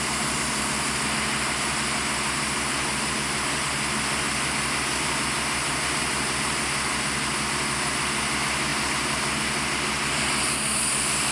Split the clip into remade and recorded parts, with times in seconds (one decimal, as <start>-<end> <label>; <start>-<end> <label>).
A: 0.0-11.3 recorded